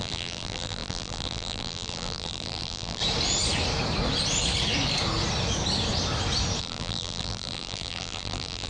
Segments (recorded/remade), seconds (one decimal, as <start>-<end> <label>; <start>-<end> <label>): 0.0-3.0 remade; 3.0-6.6 recorded; 6.6-8.7 remade